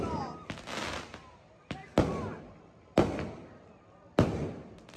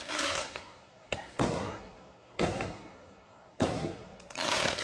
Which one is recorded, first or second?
first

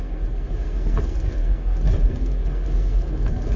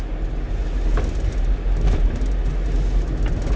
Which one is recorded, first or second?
second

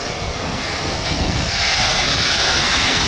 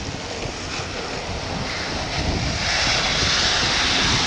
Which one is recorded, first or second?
second